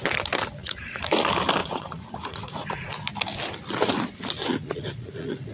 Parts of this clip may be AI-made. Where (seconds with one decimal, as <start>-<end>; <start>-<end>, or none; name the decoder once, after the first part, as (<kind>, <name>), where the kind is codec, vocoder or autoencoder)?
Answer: 0.6-1.2 (vocoder, Vocos); 1.6-2.9; 4.5-5.5